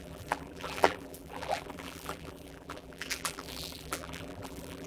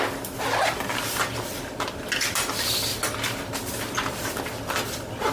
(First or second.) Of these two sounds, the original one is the second